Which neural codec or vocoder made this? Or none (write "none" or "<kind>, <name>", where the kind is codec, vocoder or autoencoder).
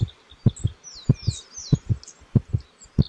none